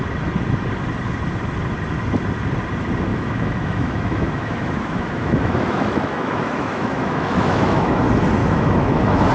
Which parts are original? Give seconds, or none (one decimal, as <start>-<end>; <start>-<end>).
0.0-3.1; 8.0-8.4